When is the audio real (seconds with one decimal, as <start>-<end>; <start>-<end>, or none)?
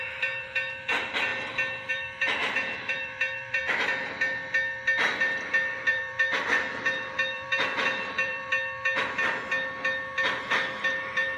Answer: 1.3-1.9; 3.6-5.9; 8.5-10.9